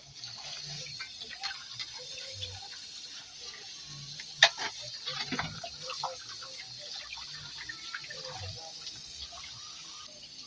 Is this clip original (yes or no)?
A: yes